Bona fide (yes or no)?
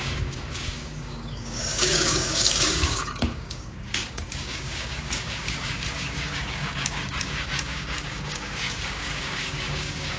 no